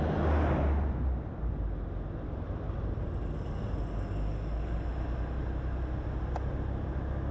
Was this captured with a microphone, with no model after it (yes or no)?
yes